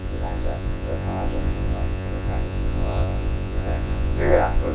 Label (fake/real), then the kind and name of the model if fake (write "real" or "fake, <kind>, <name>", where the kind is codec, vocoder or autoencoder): fake, vocoder, Vocos